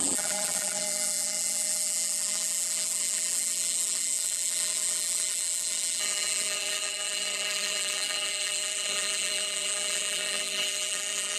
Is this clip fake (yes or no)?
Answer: yes